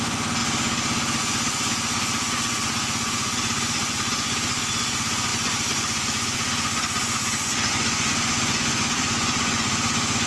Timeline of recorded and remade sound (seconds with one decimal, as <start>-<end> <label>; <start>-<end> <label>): 0.0-0.4 remade; 0.4-1.2 recorded; 1.2-10.3 remade